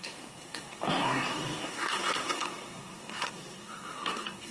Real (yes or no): no